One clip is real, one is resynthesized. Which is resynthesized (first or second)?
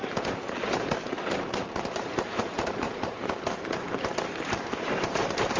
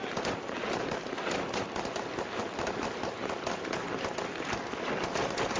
first